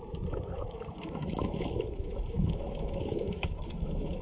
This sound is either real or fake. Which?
fake